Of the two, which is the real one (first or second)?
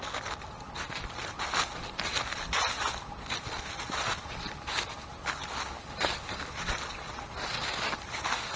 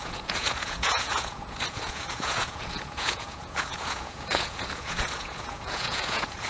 first